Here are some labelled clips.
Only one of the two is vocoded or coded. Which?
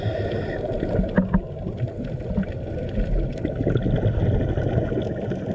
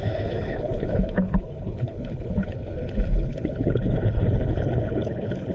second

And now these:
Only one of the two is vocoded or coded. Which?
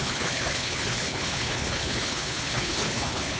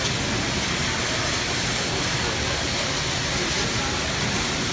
first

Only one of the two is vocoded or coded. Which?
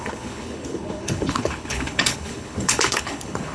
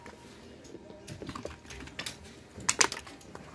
first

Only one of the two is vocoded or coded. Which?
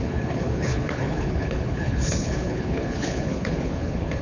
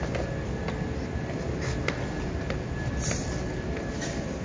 first